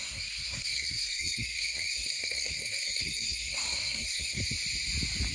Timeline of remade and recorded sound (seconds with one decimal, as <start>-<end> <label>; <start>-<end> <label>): 0.0-4.4 remade; 4.4-5.3 recorded

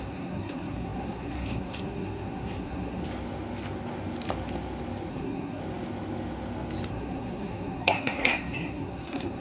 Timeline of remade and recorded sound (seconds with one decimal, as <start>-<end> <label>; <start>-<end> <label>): 0.0-3.0 remade; 3.0-5.1 recorded; 5.1-5.6 remade; 5.6-6.9 recorded; 6.9-9.4 remade

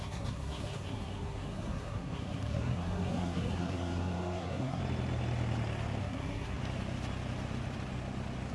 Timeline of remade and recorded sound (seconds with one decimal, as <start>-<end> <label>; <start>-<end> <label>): 0.0-4.8 remade; 4.8-6.0 recorded; 6.0-6.6 remade; 6.6-8.5 recorded

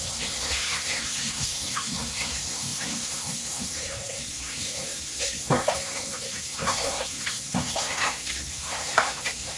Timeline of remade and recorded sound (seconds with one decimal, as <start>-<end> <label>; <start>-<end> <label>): 0.0-9.6 remade

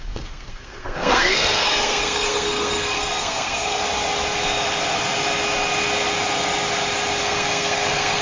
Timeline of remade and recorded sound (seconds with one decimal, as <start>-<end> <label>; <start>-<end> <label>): 0.0-3.8 remade; 3.8-7.2 recorded; 7.2-8.2 remade